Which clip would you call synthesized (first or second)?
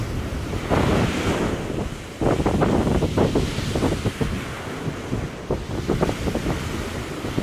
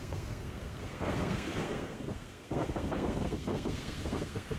second